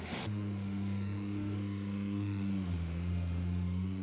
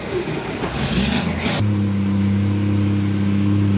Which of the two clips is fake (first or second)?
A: first